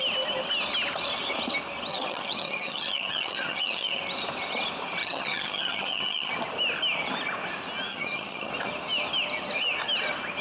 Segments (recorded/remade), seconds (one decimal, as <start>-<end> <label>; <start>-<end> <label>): 0.0-1.9 recorded; 1.9-4.0 remade; 4.0-5.0 recorded; 5.0-6.3 remade; 6.3-7.9 recorded; 7.9-8.5 remade; 8.5-10.4 recorded